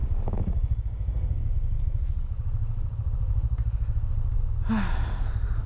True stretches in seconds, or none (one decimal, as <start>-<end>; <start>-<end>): 1.5-5.7